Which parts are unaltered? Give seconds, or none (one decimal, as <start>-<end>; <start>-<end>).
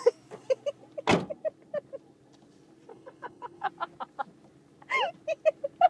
0.0-2.9; 3.7-5.9